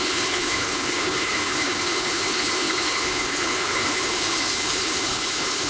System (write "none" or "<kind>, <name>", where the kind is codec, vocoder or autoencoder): codec, HILCodec